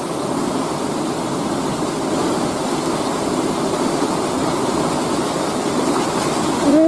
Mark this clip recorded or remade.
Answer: recorded